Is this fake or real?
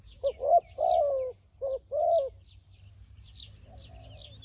real